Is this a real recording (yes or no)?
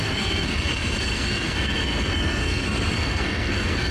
no